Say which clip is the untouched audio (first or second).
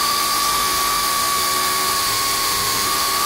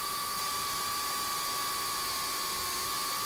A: second